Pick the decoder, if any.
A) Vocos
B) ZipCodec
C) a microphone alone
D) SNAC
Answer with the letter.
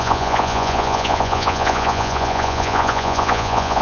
A